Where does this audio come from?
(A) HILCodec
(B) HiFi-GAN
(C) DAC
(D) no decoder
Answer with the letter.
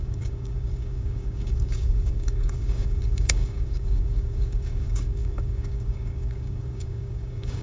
C